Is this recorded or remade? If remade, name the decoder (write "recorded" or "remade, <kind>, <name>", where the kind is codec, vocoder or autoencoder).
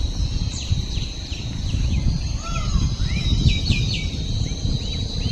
recorded